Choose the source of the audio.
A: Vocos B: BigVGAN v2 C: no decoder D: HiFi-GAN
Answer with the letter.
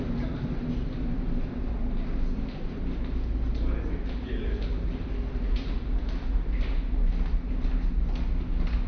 C